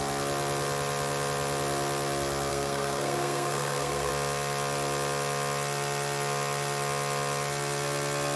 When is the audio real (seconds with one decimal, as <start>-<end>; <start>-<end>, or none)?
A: 0.0-2.5; 4.1-8.4